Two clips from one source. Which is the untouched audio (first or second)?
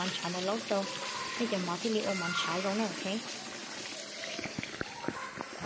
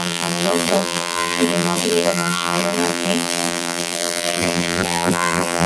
first